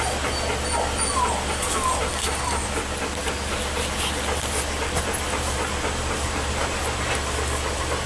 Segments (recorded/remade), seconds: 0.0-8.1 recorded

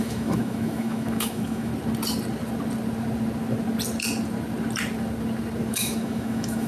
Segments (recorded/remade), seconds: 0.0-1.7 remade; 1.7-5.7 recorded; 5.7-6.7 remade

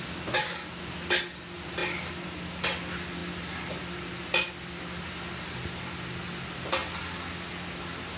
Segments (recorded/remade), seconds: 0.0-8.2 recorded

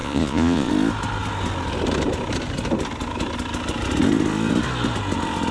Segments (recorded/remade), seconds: 0.0-0.7 remade; 0.7-5.5 recorded

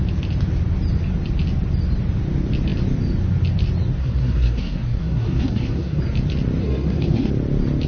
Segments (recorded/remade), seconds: 0.0-4.0 recorded; 4.0-6.0 remade; 6.0-6.6 recorded; 6.6-7.3 remade; 7.3-7.9 recorded